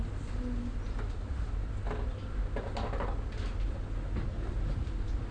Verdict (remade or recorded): recorded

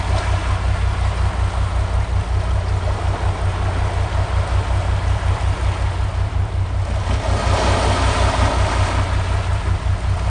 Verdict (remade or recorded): recorded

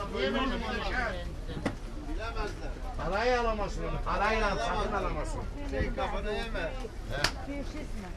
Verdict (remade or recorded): recorded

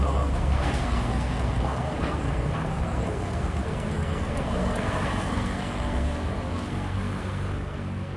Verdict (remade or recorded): remade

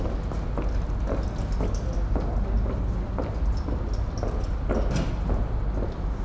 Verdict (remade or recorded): recorded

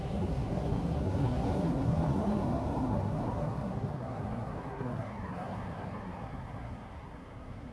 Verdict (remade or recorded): remade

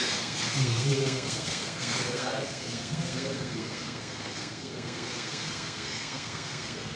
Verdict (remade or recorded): remade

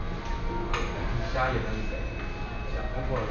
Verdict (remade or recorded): recorded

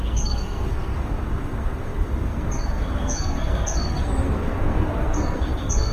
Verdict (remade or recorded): remade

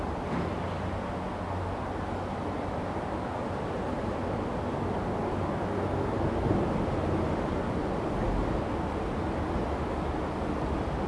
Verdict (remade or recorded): recorded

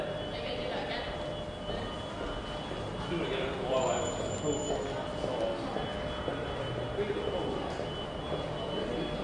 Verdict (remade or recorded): recorded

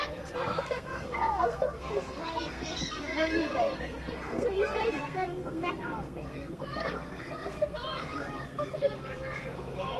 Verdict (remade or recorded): remade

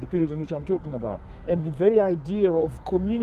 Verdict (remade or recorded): remade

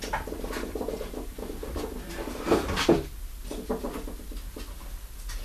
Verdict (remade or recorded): recorded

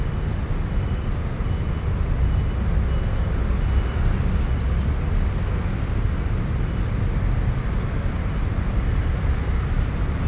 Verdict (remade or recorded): recorded